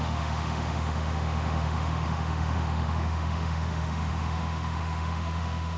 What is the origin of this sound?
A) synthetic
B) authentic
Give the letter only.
A